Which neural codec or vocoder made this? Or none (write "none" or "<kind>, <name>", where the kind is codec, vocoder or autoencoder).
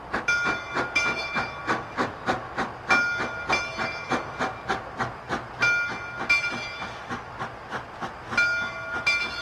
none